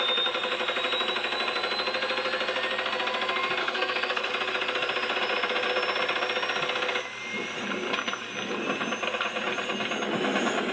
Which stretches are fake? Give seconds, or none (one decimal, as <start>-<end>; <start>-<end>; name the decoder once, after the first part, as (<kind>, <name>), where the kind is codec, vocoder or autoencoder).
3.6-4.3 (codec, SNAC)